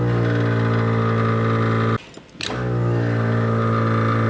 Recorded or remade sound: recorded